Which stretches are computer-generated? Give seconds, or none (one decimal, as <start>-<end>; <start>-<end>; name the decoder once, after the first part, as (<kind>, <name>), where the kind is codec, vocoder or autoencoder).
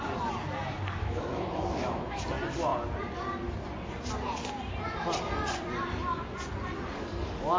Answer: 1.0-2.2 (autoencoder, DAC-VAE)